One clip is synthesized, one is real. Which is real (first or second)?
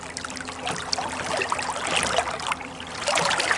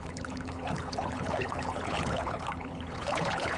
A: first